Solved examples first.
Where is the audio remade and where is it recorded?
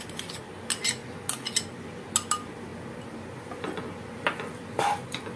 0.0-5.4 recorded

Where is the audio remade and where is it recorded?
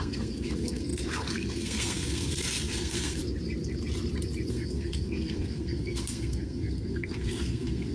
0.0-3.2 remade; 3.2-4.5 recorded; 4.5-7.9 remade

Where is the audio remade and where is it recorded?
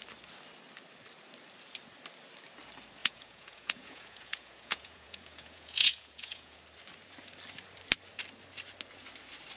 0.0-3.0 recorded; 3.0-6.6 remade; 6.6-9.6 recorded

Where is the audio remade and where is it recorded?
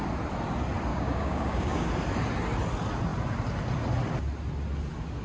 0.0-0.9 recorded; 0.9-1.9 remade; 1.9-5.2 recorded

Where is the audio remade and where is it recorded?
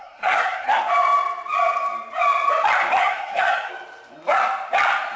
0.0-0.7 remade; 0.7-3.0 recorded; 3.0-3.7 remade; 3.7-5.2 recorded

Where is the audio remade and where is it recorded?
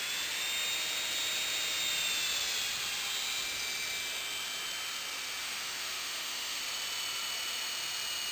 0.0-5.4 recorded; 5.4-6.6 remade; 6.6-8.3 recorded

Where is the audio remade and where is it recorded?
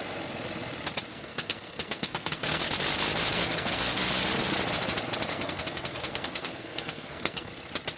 0.0-1.1 recorded; 1.1-2.6 remade; 2.6-3.3 recorded; 3.3-4.0 remade; 4.0-5.3 recorded; 5.3-7.5 remade; 7.5-8.0 recorded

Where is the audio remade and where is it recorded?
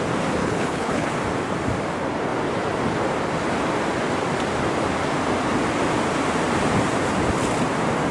0.0-0.4 recorded; 0.4-1.1 remade; 1.1-8.1 recorded